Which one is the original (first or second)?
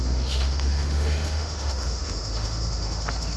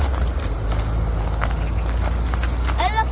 second